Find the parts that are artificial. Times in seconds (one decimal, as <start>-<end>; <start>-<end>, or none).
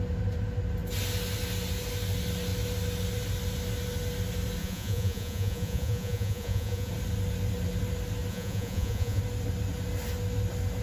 4.6-6.9; 8.3-9.2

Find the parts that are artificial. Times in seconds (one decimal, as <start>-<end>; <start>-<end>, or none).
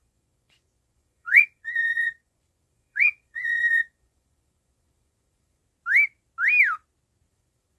0.0-5.6; 7.3-7.8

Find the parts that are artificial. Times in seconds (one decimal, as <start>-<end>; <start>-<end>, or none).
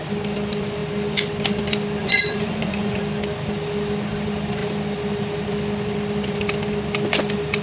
2.0-3.0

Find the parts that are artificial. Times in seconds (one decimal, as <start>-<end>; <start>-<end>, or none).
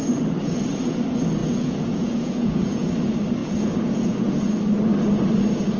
1.4-2.9; 3.4-4.6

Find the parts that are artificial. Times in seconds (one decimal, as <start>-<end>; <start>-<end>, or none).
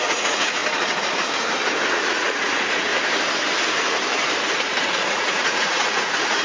0.0-0.6; 1.9-2.9; 4.4-6.4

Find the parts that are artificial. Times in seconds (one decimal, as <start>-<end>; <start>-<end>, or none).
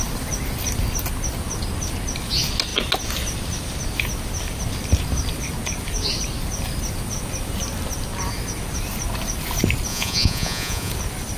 9.9-10.9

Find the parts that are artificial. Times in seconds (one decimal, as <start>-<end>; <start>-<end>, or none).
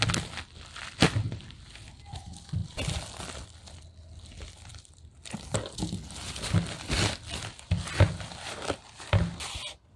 none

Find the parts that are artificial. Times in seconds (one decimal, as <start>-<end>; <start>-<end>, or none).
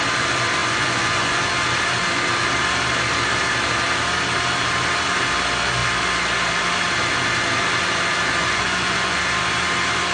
0.6-1.4; 8.4-9.2